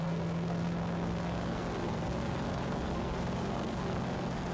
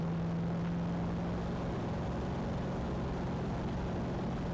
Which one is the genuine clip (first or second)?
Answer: second